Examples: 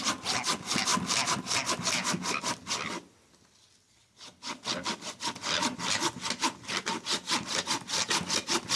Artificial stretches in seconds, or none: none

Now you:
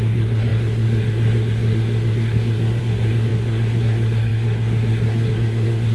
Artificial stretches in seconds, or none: 0.0-5.9 (codec, SNAC)

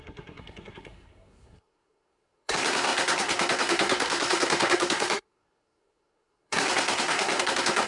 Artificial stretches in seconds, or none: 0.0-7.9 (codec, SNAC)

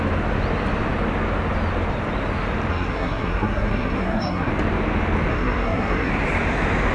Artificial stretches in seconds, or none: 2.7-4.5 (codec, SNAC); 5.3-6.1